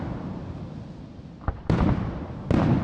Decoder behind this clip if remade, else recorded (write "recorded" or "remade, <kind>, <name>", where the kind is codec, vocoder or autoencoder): recorded